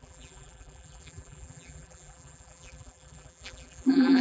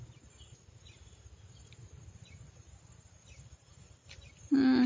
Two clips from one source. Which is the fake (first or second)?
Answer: first